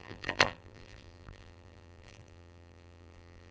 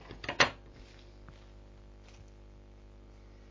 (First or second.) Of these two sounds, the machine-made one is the first